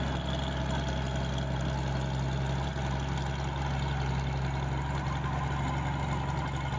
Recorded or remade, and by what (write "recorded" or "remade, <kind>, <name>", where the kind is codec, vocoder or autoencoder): recorded